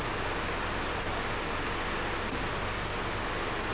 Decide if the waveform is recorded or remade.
recorded